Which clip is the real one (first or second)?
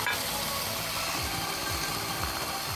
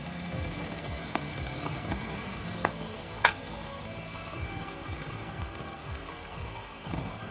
first